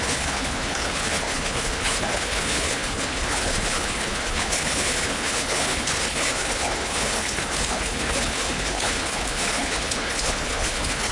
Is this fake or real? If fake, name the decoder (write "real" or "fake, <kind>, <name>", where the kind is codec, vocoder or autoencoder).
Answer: fake, codec, HILCodec